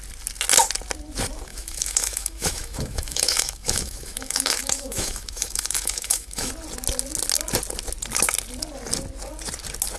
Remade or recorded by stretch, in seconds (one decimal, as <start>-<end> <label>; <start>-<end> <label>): 0.0-1.5 recorded; 1.5-6.5 remade; 6.5-10.0 recorded